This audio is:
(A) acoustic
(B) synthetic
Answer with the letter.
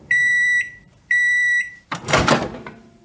B